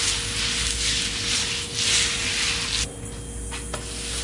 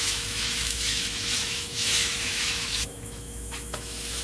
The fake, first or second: second